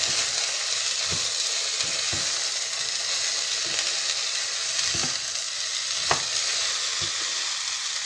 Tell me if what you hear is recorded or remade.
recorded